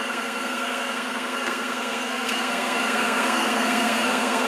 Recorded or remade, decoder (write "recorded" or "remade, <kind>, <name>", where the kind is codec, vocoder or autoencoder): remade, codec, SNAC